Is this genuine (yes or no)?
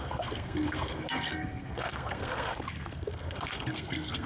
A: no